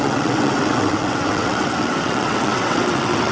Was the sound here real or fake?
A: fake